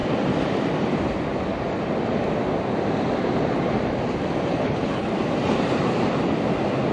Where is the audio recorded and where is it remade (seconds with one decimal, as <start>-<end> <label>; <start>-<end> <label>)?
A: 0.0-4.5 recorded; 4.5-5.1 remade; 5.1-6.9 recorded